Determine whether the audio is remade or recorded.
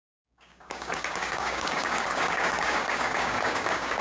remade